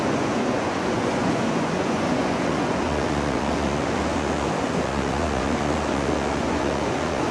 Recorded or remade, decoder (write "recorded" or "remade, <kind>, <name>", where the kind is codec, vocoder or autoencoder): remade, vocoder, Vocos